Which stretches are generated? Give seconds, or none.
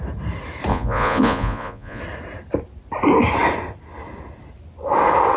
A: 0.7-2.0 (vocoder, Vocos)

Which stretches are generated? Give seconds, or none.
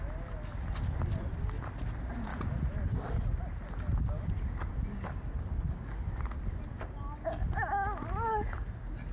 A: none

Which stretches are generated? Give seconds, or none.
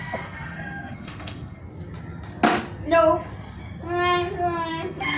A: 0.0-1.6 (codec, SNAC); 4.7-5.2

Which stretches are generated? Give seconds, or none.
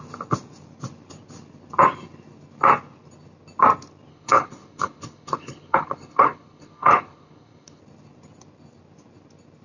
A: 4.1-7.8 (codec, HILCodec)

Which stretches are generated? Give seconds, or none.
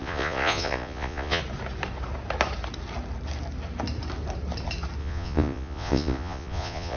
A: 0.0-1.4 (vocoder, Vocos); 5.0-7.0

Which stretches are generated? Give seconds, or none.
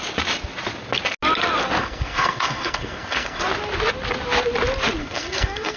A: 1.8-3.4 (codec, SNAC); 5.0-5.8